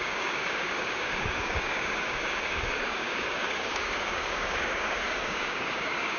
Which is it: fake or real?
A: fake